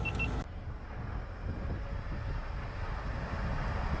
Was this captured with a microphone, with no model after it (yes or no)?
yes